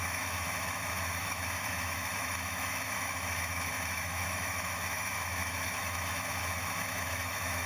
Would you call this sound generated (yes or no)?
yes